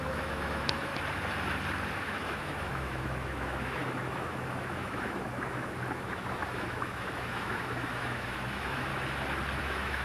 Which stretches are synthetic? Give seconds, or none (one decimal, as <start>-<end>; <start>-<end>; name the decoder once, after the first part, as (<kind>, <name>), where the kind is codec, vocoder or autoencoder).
0.0-0.9 (autoencoder, DAC-VAE); 1.9-8.9; 9.6-10.0